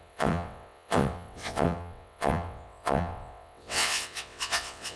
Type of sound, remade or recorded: remade